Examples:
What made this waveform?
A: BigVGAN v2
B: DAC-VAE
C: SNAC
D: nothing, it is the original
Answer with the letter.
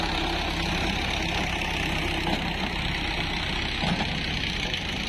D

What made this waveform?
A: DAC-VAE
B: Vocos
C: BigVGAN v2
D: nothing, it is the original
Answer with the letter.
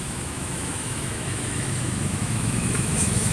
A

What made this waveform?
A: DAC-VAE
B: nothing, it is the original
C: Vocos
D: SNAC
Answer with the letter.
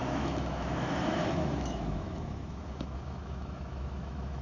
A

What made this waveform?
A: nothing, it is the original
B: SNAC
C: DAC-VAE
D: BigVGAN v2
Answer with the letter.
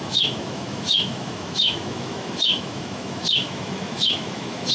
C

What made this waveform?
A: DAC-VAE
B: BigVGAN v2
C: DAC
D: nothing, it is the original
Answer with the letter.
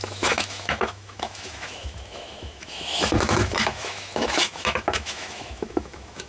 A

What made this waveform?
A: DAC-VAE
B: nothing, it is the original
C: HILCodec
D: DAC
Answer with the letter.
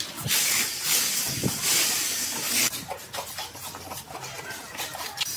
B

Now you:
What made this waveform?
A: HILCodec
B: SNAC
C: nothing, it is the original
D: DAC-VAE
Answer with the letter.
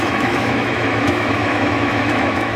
D